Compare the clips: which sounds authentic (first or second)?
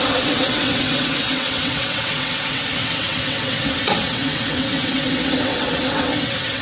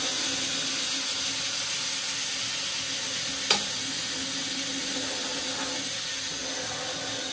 second